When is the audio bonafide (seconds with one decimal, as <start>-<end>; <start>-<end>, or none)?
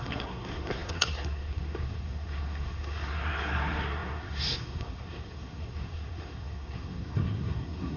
none